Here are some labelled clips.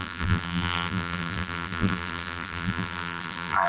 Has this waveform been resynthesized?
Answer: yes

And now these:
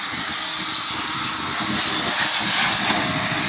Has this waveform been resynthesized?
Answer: no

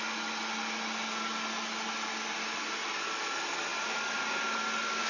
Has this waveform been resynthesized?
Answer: no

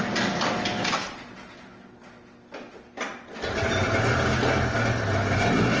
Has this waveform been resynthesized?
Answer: no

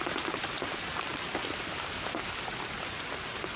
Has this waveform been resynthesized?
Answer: no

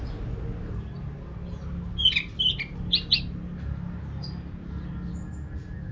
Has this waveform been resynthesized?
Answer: no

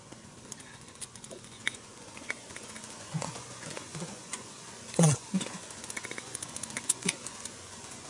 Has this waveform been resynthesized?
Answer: yes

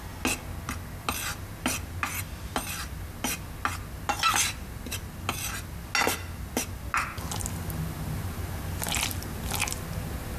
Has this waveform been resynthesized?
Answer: no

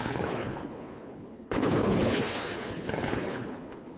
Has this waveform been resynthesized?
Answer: yes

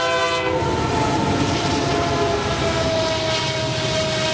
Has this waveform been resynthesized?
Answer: no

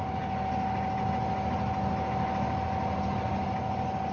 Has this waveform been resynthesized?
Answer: no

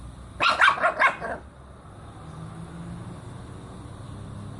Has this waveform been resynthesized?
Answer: no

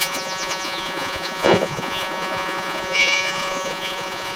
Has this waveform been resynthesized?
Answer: yes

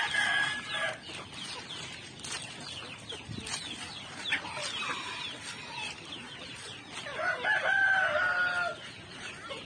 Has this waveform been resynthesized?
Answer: no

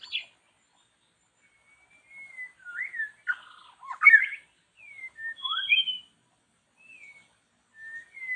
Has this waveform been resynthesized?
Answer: no